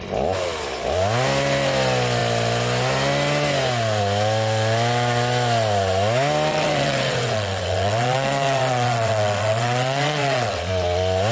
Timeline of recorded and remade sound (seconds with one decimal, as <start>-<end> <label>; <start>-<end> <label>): 0.0-6.5 recorded; 6.5-10.7 remade; 10.7-11.3 recorded